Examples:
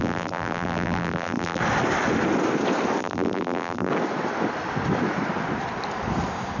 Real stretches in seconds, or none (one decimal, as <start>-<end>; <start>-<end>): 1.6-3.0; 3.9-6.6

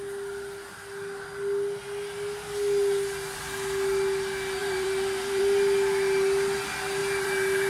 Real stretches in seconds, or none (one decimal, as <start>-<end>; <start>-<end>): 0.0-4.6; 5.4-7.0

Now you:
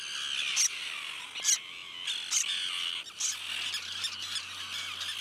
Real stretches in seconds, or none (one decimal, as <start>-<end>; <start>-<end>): 0.0-5.2

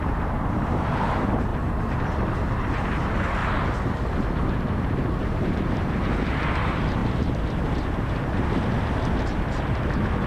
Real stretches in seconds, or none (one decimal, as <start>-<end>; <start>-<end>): 1.5-2.4; 3.4-5.2; 7.0-9.4

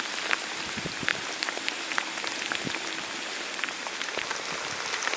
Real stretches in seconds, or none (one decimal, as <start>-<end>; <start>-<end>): 0.0-5.2

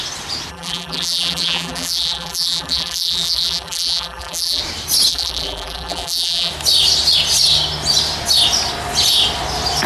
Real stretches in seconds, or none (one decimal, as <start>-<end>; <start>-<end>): 0.0-0.5; 4.6-5.1; 6.5-9.9

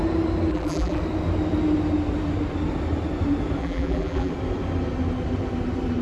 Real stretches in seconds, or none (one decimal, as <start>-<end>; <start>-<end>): 0.0-0.5; 1.0-3.6; 4.3-6.0

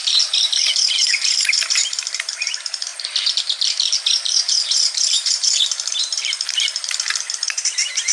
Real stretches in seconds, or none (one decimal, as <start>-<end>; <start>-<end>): none